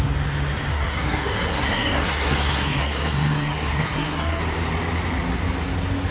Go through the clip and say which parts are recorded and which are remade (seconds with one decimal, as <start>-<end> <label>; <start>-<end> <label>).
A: 0.0-0.7 recorded; 0.7-4.4 remade; 4.4-6.1 recorded